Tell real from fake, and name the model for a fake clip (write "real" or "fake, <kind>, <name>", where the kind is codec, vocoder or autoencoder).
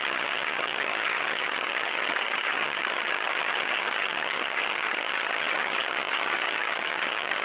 fake, vocoder, HiFi-GAN